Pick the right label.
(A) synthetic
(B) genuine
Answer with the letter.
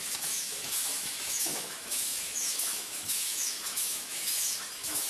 A